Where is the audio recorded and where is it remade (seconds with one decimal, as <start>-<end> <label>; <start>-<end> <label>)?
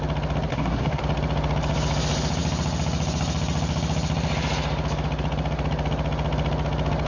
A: 0.0-0.5 recorded; 0.5-1.0 remade; 1.0-7.1 recorded